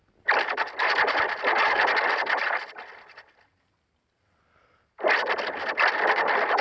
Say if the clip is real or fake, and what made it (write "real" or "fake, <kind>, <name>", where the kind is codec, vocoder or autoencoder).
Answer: real